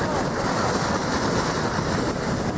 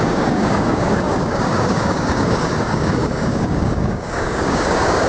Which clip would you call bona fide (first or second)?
first